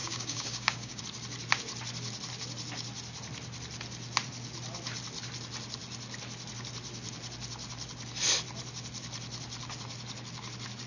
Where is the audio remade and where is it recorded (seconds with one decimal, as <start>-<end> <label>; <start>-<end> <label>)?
0.0-1.0 remade; 1.0-10.9 recorded